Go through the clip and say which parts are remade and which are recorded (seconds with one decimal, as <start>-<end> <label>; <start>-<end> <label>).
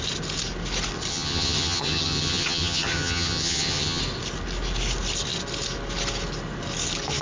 0.0-1.1 recorded; 1.1-4.0 remade; 4.0-7.2 recorded